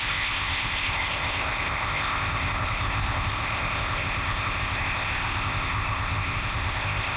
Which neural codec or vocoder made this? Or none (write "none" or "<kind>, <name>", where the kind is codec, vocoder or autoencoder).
codec, ZipCodec